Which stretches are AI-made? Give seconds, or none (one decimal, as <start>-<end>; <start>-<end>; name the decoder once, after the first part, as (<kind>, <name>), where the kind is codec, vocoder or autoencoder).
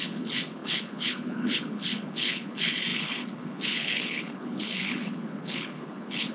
0.0-6.3 (codec, HILCodec)